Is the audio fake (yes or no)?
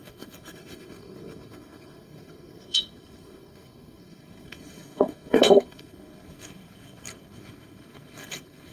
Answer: yes